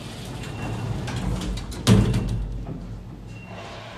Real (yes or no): yes